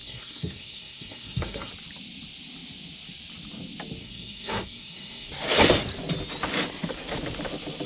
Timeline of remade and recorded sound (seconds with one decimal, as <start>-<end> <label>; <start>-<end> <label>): 0.0-1.7 remade; 1.7-4.0 recorded; 4.0-5.3 remade; 5.3-7.9 recorded